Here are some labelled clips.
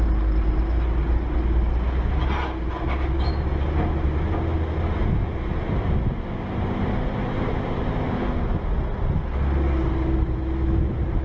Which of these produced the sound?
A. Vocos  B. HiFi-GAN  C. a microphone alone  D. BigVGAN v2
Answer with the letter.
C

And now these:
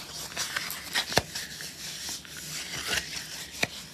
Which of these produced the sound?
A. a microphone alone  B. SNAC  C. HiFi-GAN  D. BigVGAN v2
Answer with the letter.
A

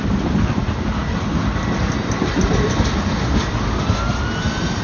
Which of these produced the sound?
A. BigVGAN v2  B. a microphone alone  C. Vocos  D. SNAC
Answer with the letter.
B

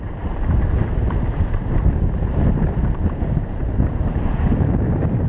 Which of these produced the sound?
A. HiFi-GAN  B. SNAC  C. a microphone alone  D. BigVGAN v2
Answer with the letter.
D